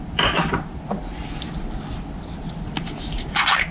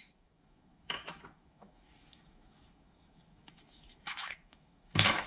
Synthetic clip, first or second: second